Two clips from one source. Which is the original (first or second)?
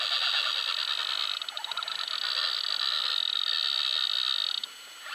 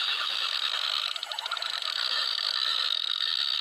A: first